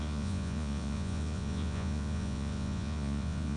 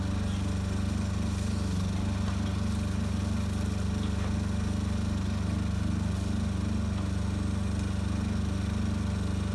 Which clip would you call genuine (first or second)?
second